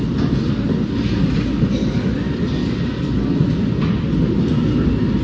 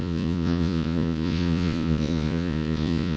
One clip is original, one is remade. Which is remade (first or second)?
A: second